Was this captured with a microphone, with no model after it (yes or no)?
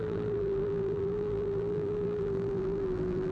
no